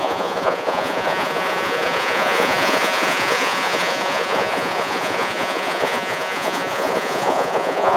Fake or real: fake